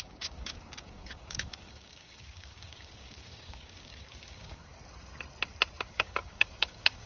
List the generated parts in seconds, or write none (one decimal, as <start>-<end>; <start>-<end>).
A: 0.0-4.7; 5.8-7.1